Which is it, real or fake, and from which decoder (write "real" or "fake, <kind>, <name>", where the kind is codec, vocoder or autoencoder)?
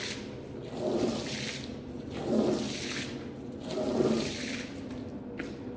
real